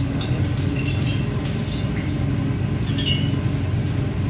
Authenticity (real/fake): real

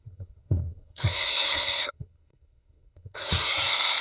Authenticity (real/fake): fake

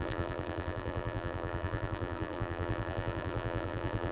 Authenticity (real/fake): fake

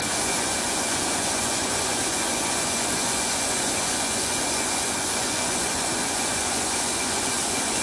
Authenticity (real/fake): fake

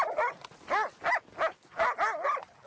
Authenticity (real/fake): real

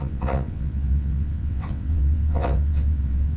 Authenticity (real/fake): fake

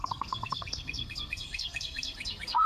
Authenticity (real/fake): fake